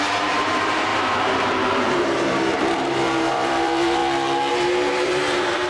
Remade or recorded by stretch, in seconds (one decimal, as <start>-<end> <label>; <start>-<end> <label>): 0.0-4.0 remade; 4.0-4.5 recorded; 4.5-5.7 remade